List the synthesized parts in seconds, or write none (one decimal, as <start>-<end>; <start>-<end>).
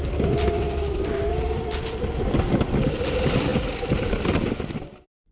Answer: none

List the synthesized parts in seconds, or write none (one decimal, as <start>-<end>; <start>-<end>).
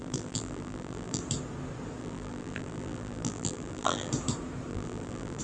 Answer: 0.0-1.2; 2.0-4.1; 4.7-5.4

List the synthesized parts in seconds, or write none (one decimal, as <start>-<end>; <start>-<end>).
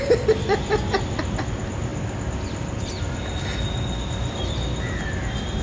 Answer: none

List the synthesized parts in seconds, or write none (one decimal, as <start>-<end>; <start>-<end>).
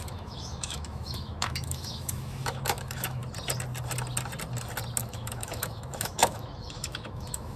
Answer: 0.0-3.2; 5.0-7.6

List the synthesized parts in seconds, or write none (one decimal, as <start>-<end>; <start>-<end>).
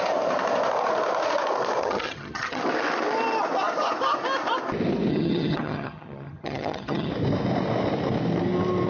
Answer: 1.8-2.6; 5.1-7.1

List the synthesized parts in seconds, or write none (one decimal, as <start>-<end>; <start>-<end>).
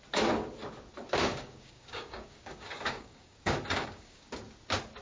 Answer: 1.3-4.3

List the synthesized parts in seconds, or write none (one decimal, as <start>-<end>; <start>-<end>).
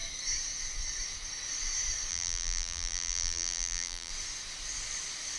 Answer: 2.1-4.1